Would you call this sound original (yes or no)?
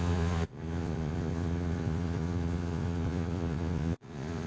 no